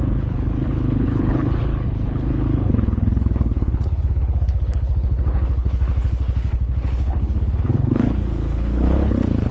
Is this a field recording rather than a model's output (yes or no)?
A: no